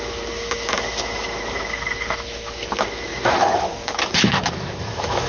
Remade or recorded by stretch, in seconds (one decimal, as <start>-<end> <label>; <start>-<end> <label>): 0.0-5.3 remade